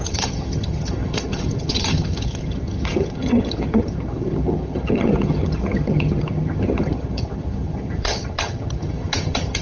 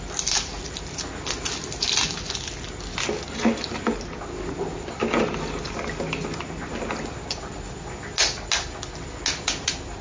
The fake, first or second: first